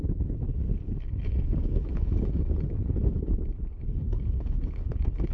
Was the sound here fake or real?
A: fake